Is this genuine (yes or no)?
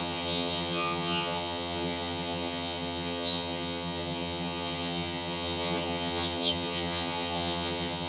no